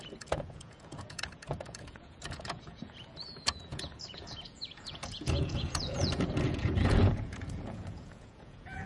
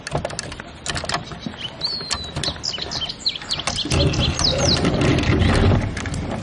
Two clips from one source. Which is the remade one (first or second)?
first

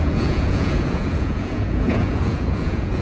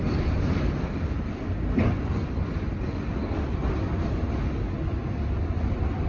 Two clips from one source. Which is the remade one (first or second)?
first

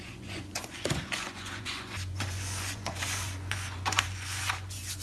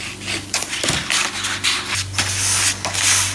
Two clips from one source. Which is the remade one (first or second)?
first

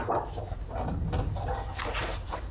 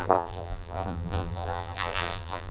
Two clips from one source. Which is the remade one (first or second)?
second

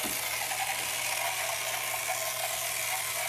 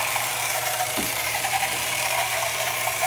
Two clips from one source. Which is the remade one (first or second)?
second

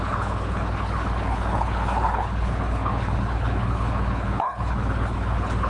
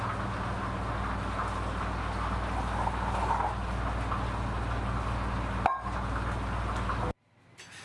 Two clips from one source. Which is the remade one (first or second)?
first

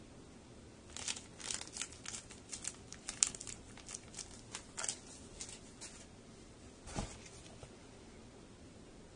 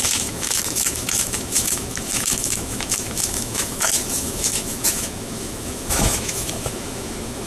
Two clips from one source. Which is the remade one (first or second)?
second